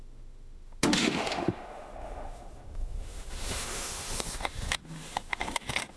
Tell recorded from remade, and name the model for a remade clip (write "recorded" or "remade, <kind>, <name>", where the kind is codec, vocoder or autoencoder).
remade, autoencoder, DAC-VAE